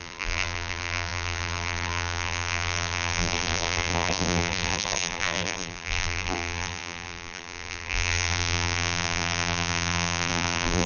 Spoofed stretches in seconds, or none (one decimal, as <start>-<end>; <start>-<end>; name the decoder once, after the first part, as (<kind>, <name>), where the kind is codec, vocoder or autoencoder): 0.0-10.9 (vocoder, BigVGAN v2)